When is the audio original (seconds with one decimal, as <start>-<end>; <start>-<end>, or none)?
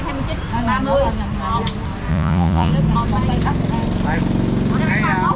0.0-2.1; 2.7-5.4